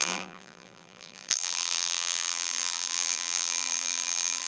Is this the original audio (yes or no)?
no